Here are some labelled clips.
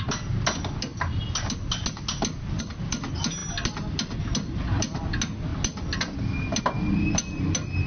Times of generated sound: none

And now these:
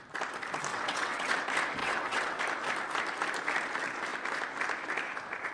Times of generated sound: 0.7-1.4; 1.8-2.4

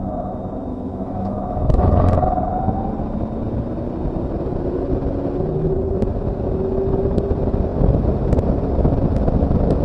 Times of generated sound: 0.7-1.9

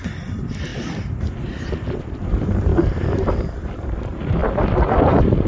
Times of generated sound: 0.7-1.3; 2.7-3.6; 4.4-5.1

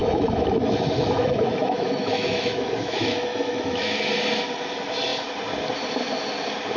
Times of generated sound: 0.0-4.1

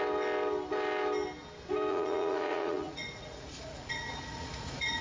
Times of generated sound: 1.9-5.0